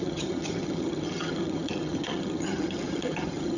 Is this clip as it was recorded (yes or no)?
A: no